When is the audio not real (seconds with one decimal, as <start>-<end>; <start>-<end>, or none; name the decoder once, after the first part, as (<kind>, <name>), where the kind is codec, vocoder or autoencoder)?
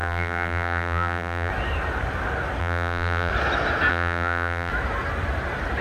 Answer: 0.0-1.5 (vocoder, BigVGAN v2); 2.6-3.3; 3.9-4.7